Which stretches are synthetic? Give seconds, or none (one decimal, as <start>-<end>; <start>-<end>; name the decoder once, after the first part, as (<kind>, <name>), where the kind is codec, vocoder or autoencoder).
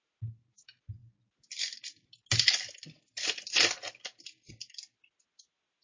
none